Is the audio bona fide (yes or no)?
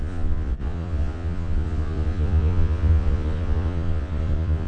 no